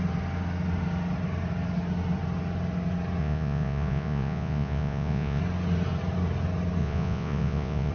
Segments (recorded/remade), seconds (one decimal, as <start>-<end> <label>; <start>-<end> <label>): 0.0-3.2 recorded; 3.2-5.4 remade; 5.4-6.8 recorded; 6.8-7.9 remade